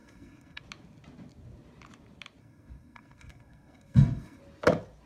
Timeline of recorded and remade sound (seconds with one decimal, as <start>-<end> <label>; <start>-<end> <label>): 0.0-0.6 remade; 0.6-2.4 recorded; 2.4-4.4 remade; 4.4-5.1 recorded

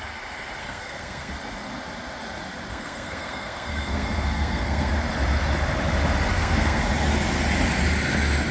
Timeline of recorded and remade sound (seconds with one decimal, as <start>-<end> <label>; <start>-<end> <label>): 0.0-0.6 recorded; 0.6-1.3 remade; 1.3-2.7 recorded; 2.7-4.9 remade; 4.9-6.3 recorded; 6.3-6.8 remade; 6.8-8.5 recorded

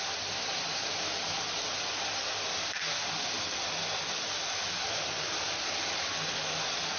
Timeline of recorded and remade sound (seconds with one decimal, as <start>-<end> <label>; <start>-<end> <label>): 0.0-3.8 recorded; 3.8-5.7 remade; 5.7-7.0 recorded